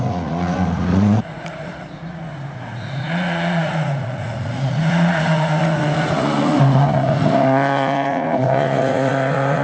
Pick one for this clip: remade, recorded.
remade